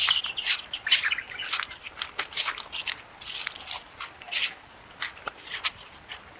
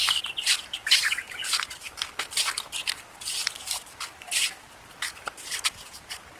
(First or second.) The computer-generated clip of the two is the second